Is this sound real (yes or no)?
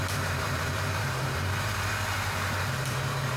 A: no